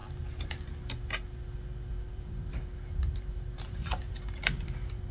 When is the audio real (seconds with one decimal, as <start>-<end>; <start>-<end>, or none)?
0.0-1.9

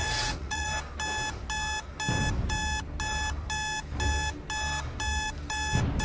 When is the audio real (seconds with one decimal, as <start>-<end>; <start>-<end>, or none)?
0.7-6.0

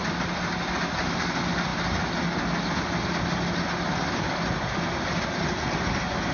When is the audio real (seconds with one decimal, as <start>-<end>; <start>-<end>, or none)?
0.0-6.3

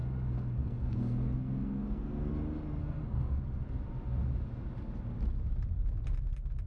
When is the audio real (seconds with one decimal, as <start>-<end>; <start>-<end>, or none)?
2.3-2.8; 3.4-6.7

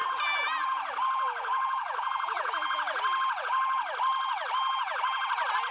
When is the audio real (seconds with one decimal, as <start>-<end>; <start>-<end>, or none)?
0.0-5.7

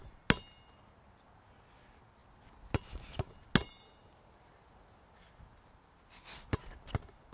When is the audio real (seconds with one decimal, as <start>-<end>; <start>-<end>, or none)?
0.0-7.3

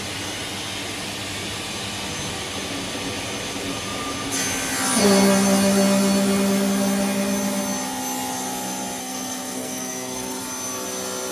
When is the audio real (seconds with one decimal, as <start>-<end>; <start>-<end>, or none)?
0.0-9.0; 10.4-11.3

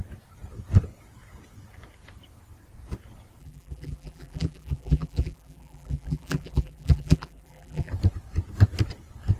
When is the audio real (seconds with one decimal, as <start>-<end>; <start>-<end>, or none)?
0.0-3.4; 7.9-9.4